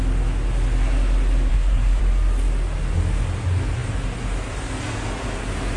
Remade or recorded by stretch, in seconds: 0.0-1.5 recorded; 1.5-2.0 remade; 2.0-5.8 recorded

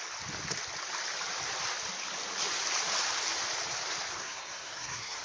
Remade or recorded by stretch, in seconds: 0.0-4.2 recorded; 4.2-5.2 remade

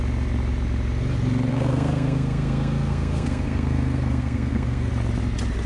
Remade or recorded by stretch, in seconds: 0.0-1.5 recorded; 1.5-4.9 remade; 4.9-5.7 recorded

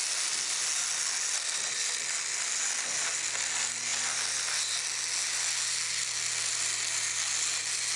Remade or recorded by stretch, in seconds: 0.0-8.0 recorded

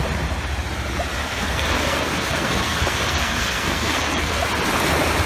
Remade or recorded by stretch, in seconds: 0.0-1.2 recorded; 1.2-4.4 remade; 4.4-5.3 recorded

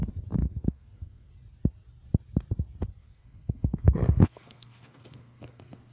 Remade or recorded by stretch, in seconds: 0.0-0.4 recorded; 0.4-1.3 remade; 1.3-3.0 recorded; 3.0-5.9 remade

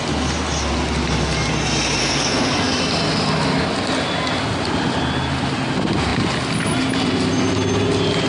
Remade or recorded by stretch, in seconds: 0.0-2.0 recorded; 2.0-2.5 remade; 2.5-8.3 recorded